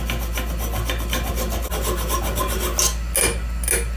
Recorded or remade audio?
recorded